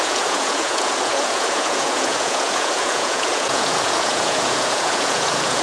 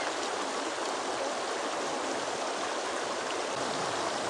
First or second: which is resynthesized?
first